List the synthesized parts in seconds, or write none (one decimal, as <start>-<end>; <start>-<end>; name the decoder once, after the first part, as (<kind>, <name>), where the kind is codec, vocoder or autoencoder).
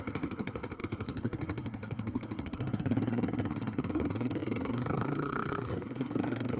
0.0-6.6 (codec, SNAC)